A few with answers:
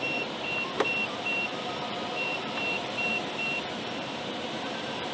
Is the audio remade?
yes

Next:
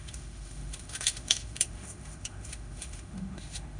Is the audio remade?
yes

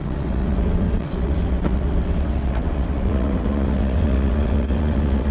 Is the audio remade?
yes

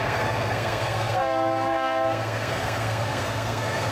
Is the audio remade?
yes